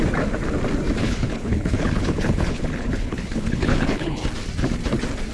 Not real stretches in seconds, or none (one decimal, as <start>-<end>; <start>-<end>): 1.0-4.2